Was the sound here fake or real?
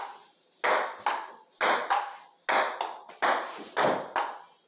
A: real